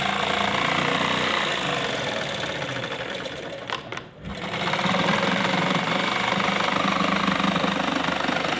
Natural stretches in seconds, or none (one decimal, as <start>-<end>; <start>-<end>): 0.0-8.6

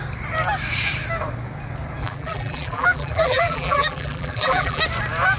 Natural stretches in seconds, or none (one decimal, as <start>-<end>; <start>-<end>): 0.0-2.0; 4.8-5.4

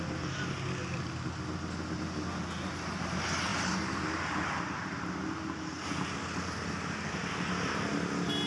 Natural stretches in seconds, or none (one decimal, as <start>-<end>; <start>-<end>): 0.0-3.5; 4.0-8.5

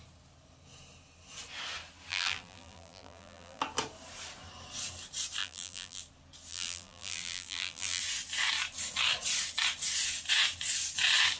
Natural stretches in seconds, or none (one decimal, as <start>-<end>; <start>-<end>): 0.0-2.1; 3.6-5.4; 6.0-6.5; 8.0-11.4

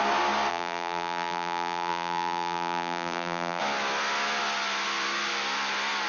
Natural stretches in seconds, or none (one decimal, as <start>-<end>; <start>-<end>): 0.0-0.5; 3.6-6.1

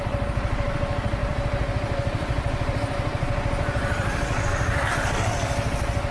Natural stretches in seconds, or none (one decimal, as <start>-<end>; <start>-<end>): 0.0-1.2; 4.9-6.1

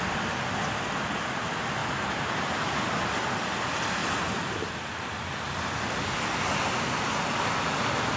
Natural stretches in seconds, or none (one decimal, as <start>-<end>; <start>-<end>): 0.0-1.8; 2.3-8.2

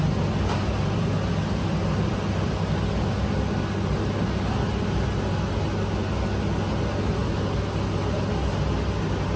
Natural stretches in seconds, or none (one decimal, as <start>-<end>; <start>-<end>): 0.0-9.4